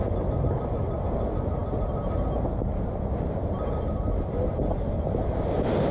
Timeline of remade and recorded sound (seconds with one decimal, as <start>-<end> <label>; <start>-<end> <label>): 0.0-5.9 recorded